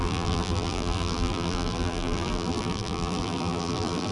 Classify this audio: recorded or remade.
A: remade